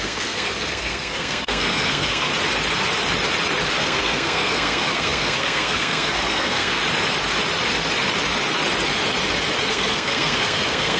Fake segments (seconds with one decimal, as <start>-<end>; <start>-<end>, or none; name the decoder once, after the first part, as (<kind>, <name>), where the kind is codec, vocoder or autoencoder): 0.0-2.3 (codec, SNAC); 3.8-6.8; 9.7-11.0